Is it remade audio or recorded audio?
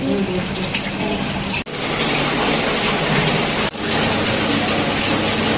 recorded